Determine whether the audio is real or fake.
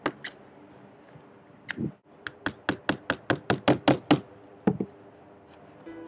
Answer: real